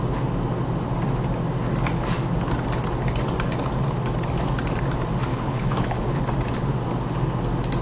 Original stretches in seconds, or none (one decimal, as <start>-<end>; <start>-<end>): 0.0-5.3; 6.2-7.8